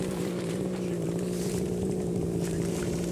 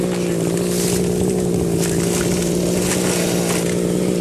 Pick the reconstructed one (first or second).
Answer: first